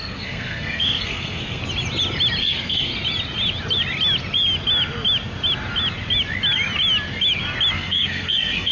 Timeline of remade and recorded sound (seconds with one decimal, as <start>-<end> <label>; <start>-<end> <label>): 0.0-1.6 remade; 1.6-2.4 recorded; 2.4-2.9 remade; 2.9-7.7 recorded; 7.7-8.7 remade